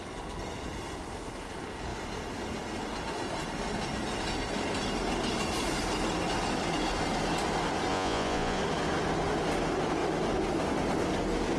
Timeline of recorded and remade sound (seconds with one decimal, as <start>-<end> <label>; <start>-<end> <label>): 0.0-7.9 recorded; 7.9-8.6 remade; 8.6-11.6 recorded